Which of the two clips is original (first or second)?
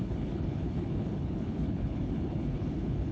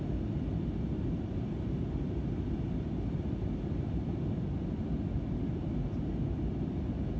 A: second